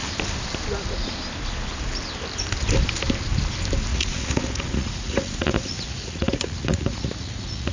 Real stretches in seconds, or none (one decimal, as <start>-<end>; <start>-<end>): 0.0-3.9